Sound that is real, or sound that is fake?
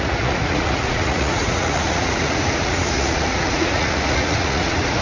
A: fake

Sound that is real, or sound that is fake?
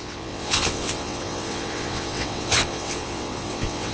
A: fake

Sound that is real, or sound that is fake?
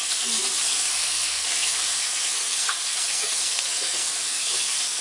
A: fake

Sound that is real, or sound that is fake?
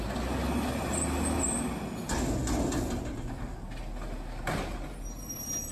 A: real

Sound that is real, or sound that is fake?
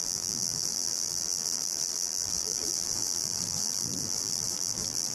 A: fake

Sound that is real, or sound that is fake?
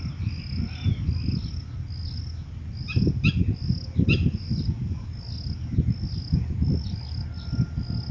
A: real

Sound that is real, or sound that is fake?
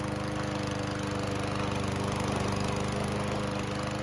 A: real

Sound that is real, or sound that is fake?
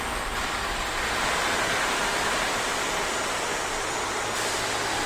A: real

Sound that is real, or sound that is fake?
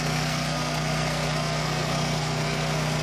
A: fake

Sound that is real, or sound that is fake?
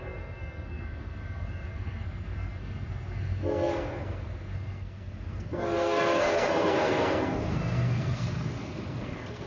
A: fake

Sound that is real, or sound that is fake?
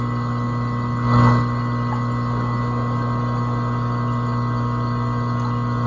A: real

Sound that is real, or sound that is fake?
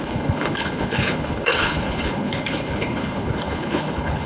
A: fake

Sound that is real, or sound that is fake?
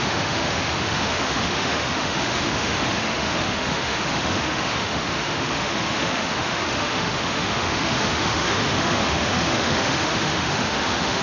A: fake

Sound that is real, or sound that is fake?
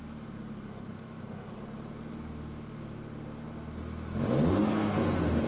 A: real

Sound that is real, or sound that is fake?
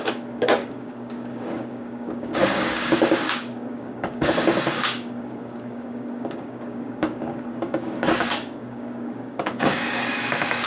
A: fake